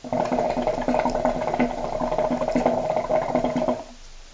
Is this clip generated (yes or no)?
no